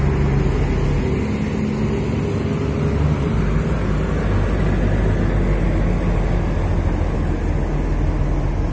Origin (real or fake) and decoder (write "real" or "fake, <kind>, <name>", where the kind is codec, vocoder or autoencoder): real